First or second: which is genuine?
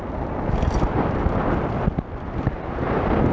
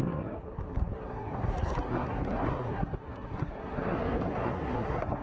first